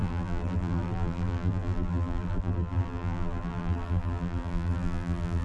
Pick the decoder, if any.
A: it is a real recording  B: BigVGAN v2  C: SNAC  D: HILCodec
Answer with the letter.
B